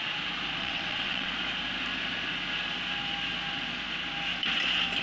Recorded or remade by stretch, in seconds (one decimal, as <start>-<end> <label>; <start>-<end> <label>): 0.0-0.6 recorded; 0.6-1.3 remade; 1.3-5.0 recorded